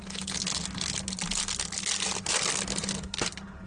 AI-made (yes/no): no